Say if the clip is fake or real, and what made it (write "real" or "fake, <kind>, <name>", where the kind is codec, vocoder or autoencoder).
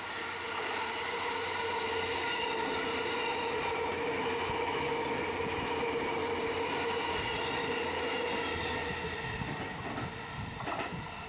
real